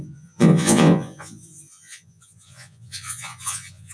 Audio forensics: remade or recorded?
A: remade